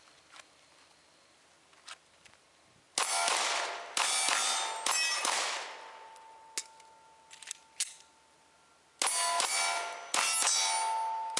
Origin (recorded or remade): recorded